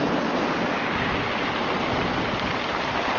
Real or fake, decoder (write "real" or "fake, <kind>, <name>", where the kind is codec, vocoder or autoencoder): real